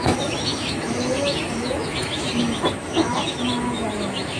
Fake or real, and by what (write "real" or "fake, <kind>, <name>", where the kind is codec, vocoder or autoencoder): fake, autoencoder, DAC-VAE